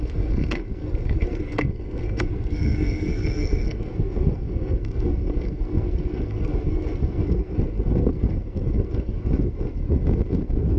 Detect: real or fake fake